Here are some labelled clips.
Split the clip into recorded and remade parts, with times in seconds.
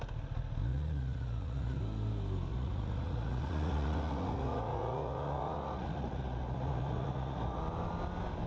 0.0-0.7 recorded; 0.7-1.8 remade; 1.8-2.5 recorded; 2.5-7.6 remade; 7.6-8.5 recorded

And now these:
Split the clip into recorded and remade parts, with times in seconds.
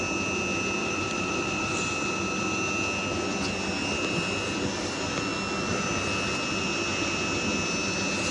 0.0-0.8 recorded; 0.8-1.8 remade; 1.8-8.3 recorded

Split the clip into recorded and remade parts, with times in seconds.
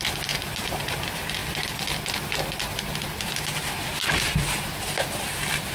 0.0-5.7 recorded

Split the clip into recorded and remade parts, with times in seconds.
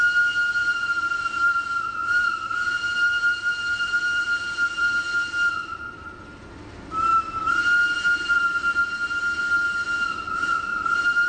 0.0-0.6 recorded; 0.6-5.5 remade; 5.5-10.7 recorded; 10.7-11.3 remade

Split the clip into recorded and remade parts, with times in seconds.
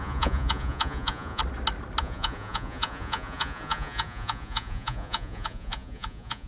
0.0-1.4 remade; 1.4-2.0 recorded; 2.0-6.5 remade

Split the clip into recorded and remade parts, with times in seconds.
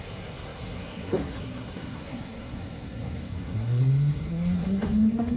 0.0-5.4 remade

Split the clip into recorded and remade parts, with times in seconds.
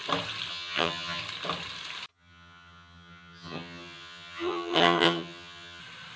0.0-0.5 recorded; 0.5-1.2 remade; 1.2-2.1 recorded; 2.1-5.8 remade; 5.8-6.2 recorded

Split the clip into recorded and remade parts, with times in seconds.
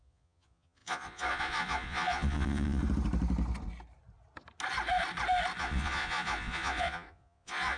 0.0-2.8 remade; 2.8-5.6 recorded; 5.6-7.8 remade